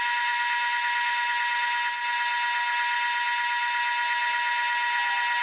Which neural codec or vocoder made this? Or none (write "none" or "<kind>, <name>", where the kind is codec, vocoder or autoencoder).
none